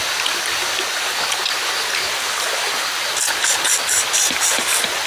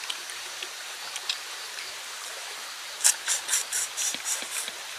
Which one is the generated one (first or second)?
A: second